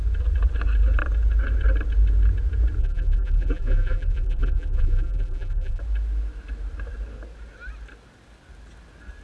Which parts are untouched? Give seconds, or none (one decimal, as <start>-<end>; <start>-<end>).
0.0-2.8; 5.8-9.2